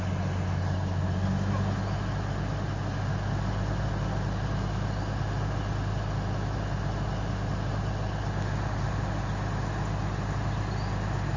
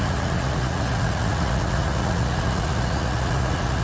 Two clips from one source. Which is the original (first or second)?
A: first